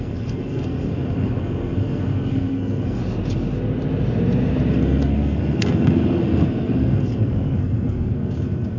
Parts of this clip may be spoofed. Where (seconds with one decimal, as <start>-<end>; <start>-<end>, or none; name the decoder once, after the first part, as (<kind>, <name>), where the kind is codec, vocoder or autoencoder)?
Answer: 0.0-3.0 (codec, SNAC); 4.7-8.8

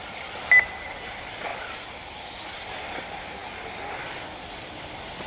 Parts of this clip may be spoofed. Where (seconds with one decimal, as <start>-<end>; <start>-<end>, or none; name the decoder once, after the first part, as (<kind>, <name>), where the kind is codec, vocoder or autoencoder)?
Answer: none

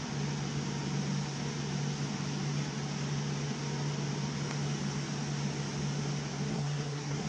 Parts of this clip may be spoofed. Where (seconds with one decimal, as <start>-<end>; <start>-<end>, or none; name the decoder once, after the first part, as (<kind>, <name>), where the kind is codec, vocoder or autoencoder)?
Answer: 6.5-7.3 (codec, SNAC)

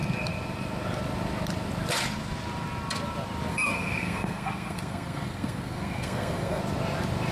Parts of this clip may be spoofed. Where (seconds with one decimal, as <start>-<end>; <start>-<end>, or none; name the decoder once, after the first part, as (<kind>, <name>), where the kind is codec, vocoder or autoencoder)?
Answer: 3.5-6.6 (codec, SNAC)

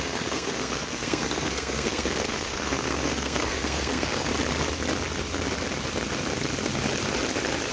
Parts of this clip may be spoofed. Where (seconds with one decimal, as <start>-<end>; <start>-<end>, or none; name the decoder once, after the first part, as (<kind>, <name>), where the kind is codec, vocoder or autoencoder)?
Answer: 0.0-4.3 (codec, SNAC)